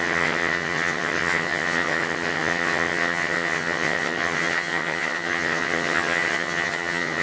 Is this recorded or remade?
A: remade